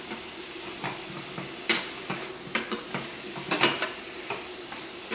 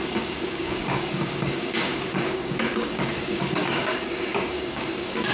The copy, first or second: second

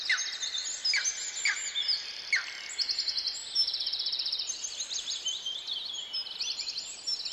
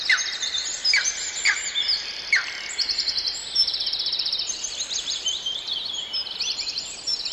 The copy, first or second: second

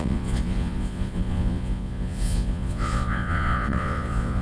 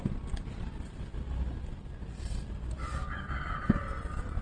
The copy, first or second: first